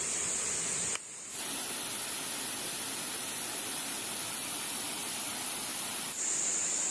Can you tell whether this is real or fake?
real